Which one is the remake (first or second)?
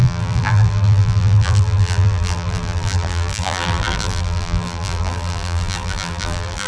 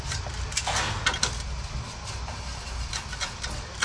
first